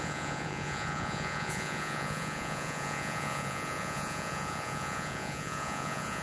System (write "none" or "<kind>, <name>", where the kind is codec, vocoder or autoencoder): vocoder, Vocos